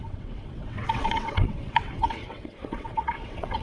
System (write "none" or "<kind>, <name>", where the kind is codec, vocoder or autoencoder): vocoder, WaveNeXt